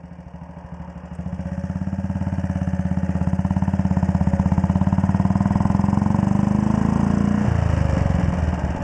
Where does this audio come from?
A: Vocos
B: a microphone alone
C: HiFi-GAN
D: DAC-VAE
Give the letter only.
B